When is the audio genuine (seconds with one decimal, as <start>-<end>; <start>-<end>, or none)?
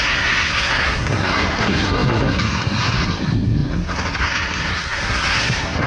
none